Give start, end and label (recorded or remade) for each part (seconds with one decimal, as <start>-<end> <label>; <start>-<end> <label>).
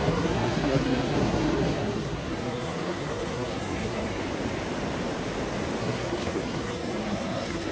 0.0-4.2 remade; 4.2-5.8 recorded; 5.8-7.7 remade